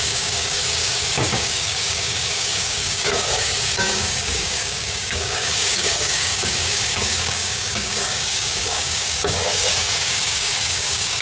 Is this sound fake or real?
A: fake